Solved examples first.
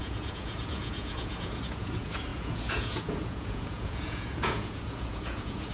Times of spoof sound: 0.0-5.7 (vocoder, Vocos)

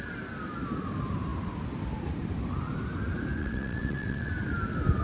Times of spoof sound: 3.4-4.3 (vocoder, WaveNeXt)